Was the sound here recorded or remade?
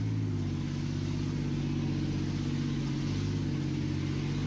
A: recorded